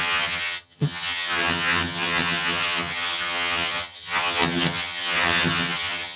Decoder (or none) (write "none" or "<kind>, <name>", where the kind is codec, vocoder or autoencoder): vocoder, HiFi-GAN